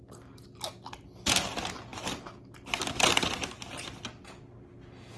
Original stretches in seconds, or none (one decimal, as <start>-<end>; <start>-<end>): 0.0-5.2